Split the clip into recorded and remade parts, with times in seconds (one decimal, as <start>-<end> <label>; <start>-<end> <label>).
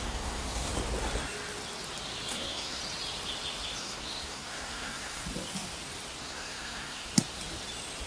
0.0-0.7 remade; 0.7-2.3 recorded; 2.3-2.8 remade; 2.8-3.8 recorded; 3.8-5.2 remade; 5.2-6.2 recorded; 6.2-7.1 remade; 7.1-8.1 recorded